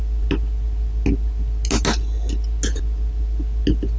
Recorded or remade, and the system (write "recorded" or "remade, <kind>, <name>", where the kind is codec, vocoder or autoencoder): recorded